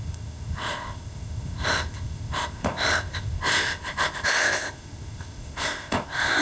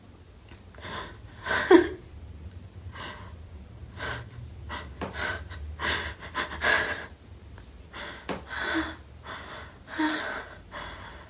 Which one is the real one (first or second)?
second